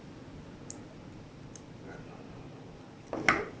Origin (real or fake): real